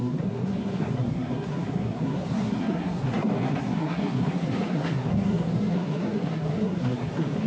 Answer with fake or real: fake